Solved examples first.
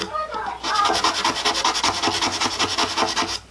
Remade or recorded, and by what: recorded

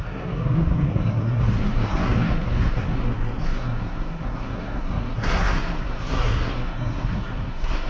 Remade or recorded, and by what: remade, codec, SNAC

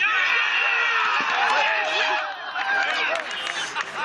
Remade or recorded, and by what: recorded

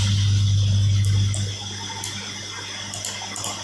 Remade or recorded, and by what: recorded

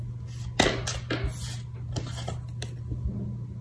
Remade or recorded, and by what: recorded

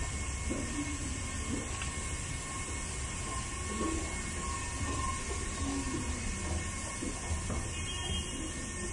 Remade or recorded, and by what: recorded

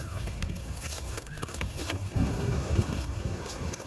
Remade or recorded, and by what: remade, codec, SNAC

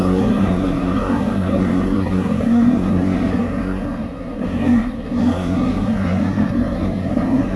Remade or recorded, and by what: remade, codec, SNAC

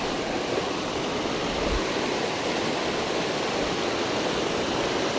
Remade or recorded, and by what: recorded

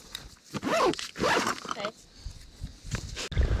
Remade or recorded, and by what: recorded